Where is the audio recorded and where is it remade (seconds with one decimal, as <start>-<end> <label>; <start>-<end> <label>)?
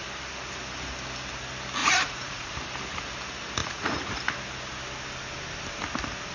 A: 0.0-1.8 recorded; 1.8-2.5 remade; 2.5-3.6 recorded; 3.6-4.1 remade; 4.1-6.3 recorded